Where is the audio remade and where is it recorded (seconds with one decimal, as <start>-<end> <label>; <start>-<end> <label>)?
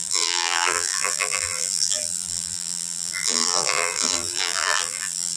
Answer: 0.0-5.4 remade